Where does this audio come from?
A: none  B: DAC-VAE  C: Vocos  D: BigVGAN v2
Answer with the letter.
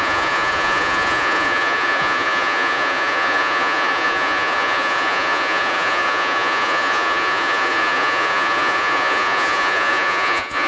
C